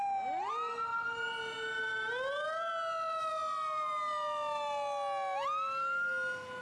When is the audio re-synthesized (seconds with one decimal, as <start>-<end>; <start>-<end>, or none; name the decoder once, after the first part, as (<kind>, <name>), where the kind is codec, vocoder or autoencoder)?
none